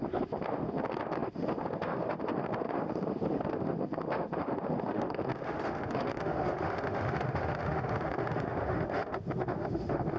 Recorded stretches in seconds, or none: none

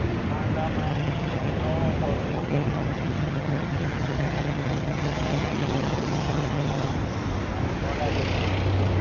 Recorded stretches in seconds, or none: 0.0-0.9; 1.5-2.3; 6.9-9.0

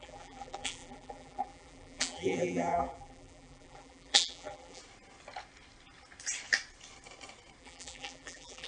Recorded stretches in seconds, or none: 4.8-7.6

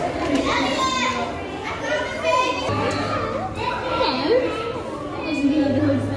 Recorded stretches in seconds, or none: 0.0-6.2

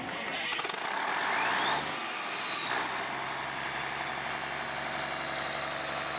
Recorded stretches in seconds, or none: 0.0-6.2